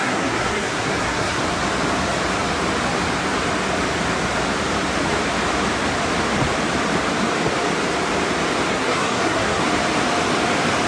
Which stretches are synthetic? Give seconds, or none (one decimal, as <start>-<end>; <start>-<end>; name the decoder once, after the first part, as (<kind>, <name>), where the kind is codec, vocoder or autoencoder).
0.0-1.4 (codec, SNAC); 8.7-9.6